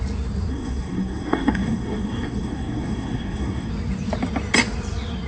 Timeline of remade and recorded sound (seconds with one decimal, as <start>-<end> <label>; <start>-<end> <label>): 0.0-0.5 recorded; 0.5-3.7 remade; 3.7-5.3 recorded